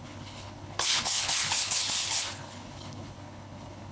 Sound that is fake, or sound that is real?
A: fake